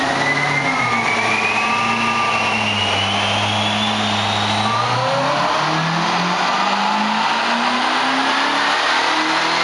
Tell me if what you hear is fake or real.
real